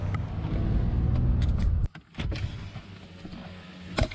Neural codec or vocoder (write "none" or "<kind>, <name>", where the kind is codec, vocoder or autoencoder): none